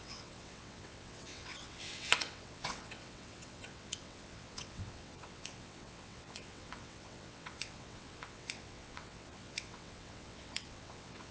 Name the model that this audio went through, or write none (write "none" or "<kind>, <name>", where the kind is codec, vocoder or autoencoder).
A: vocoder, WaveNeXt